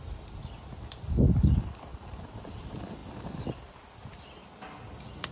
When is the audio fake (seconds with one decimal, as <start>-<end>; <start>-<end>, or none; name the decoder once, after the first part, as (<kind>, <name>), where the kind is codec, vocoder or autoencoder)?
1.9-2.5 (vocoder, BigVGAN v2)

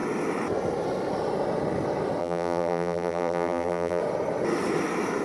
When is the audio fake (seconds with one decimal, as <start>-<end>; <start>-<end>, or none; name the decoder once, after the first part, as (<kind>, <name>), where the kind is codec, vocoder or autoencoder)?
2.2-4.0 (vocoder, BigVGAN v2)

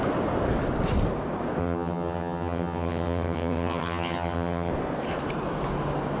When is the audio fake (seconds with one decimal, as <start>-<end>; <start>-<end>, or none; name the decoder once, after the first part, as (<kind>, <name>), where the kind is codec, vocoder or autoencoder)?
1.6-4.7 (vocoder, HiFi-GAN)